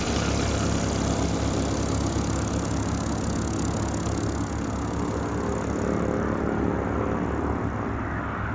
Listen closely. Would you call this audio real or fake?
real